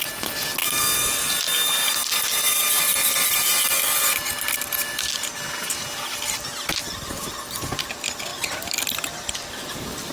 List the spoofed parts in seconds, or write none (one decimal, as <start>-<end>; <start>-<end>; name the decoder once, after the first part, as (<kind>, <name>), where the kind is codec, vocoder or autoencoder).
8.3-10.1 (vocoder, BigVGAN v2)